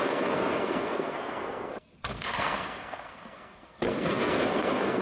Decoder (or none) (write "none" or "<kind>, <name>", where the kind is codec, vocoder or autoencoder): codec, SNAC